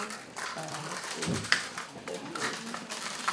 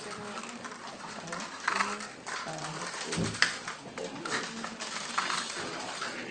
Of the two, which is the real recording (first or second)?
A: second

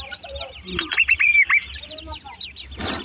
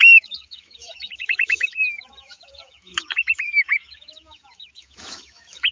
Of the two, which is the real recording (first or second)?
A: first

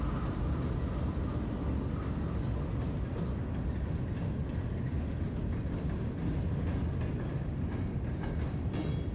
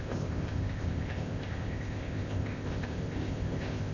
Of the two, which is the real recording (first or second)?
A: first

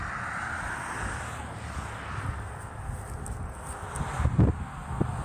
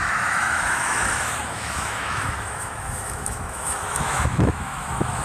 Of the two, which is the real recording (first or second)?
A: first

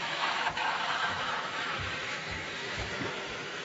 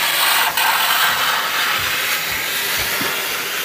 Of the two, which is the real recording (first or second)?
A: second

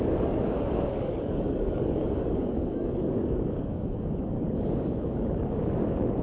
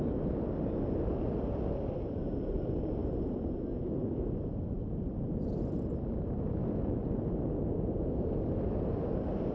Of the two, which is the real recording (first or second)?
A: second